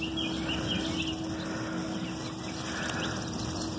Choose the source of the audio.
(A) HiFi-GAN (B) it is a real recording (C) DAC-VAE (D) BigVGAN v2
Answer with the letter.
B